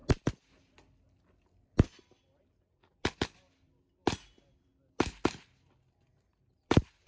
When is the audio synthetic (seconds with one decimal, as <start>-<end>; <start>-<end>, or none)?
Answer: 0.0-4.7; 5.7-7.1